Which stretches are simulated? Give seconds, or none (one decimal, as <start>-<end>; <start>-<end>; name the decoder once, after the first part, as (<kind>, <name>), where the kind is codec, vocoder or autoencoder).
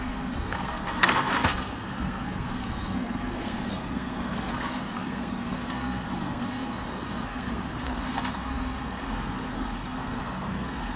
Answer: 0.0-11.0 (codec, SNAC)